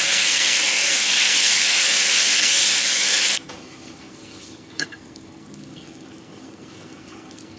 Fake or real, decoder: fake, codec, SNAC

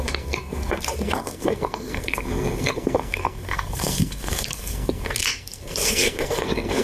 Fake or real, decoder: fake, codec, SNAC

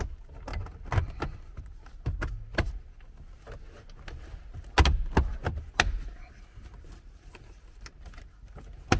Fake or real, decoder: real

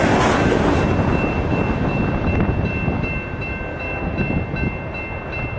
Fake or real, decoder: real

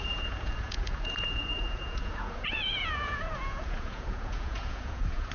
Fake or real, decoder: fake, vocoder, Vocos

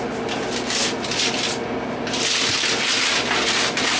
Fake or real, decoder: real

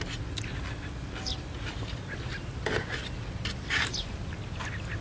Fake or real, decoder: real